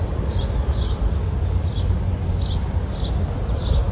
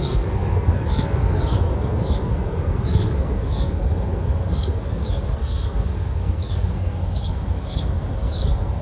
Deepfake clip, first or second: second